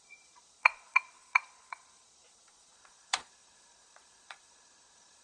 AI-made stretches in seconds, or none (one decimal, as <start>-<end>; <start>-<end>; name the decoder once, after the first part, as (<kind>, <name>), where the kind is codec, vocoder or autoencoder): 0.0-5.2 (vocoder, Vocos)